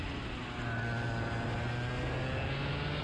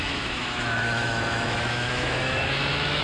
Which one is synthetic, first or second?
second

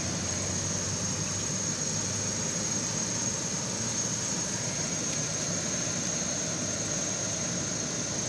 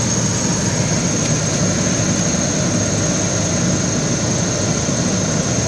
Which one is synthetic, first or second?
first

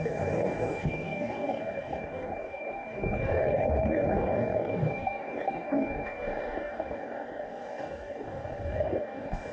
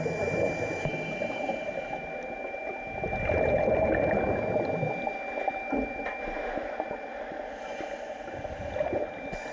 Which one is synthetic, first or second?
first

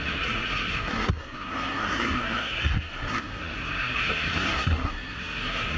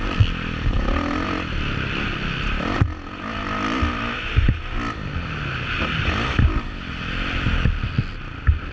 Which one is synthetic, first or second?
first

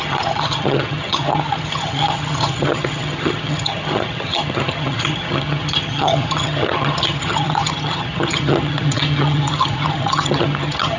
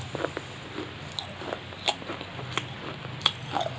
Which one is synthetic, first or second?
first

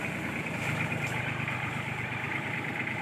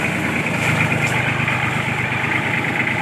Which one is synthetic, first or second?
first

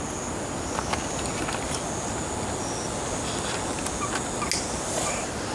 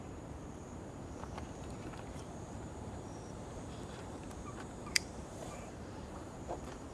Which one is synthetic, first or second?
second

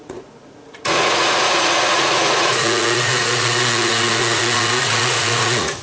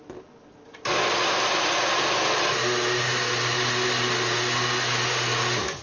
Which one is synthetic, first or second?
first